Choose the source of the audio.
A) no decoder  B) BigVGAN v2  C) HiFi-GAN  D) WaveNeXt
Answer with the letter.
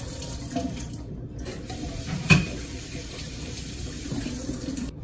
B